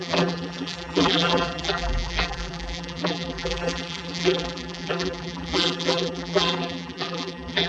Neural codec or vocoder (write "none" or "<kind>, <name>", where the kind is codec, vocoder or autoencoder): vocoder, BigVGAN v2